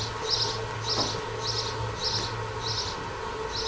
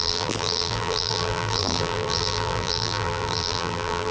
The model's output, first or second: second